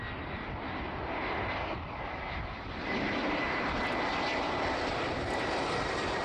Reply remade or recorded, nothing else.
recorded